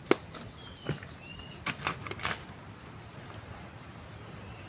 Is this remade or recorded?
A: recorded